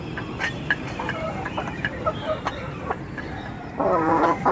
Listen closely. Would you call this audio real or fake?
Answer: fake